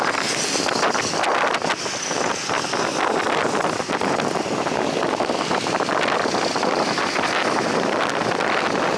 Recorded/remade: recorded